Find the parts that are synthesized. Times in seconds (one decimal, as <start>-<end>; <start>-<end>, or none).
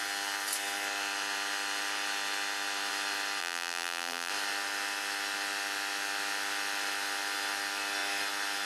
3.4-4.3